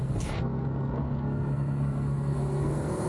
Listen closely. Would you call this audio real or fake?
fake